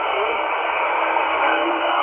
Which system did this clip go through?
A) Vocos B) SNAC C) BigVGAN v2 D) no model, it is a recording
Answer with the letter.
B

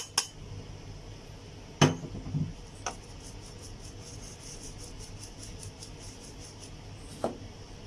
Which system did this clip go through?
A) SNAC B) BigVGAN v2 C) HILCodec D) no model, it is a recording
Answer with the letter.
D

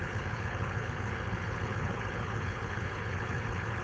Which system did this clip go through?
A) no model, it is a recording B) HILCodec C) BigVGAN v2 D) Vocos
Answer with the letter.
B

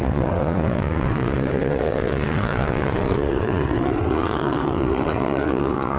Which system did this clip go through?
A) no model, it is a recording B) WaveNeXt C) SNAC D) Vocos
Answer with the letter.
B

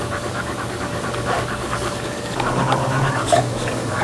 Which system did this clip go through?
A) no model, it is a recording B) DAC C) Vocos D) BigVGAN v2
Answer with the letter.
B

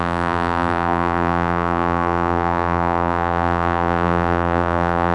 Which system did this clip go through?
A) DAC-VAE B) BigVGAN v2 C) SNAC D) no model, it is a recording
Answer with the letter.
B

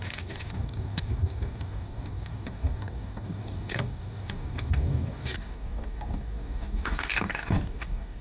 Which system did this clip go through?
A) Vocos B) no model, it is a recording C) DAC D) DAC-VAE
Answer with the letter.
C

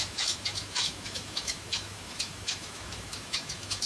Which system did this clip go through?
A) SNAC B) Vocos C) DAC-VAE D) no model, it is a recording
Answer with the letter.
C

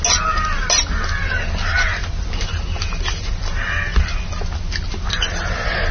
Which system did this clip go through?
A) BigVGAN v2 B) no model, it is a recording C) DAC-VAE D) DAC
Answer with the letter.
B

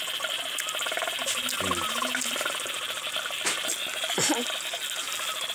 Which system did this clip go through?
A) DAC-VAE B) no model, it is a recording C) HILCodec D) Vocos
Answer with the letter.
B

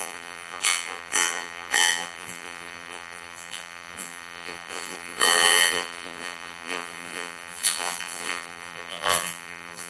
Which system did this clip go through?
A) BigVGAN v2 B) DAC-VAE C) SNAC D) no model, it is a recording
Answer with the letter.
A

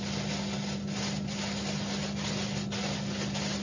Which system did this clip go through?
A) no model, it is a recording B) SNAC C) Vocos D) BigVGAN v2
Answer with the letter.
A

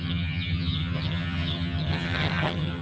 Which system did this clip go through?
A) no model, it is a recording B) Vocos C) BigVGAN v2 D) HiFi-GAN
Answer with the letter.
D